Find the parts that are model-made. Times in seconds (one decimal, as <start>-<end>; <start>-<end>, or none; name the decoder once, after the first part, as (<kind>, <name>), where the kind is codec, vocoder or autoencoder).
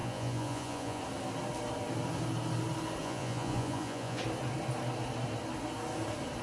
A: 0.0-1.0 (vocoder, Vocos); 3.0-4.2